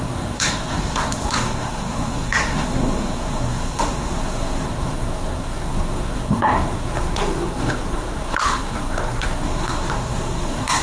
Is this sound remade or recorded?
remade